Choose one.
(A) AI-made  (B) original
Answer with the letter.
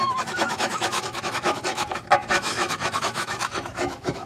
A